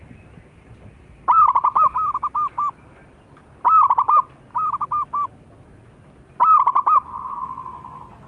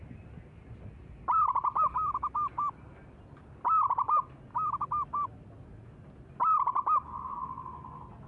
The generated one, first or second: first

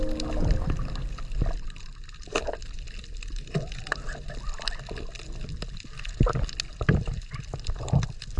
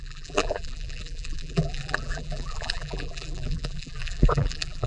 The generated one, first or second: second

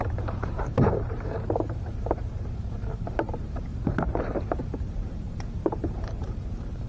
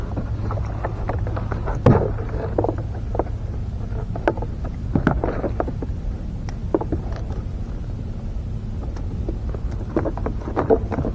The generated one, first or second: first